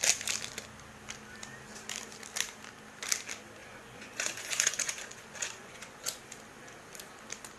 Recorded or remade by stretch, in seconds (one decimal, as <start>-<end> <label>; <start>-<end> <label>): 0.0-3.6 recorded; 3.6-6.2 remade; 6.2-7.6 recorded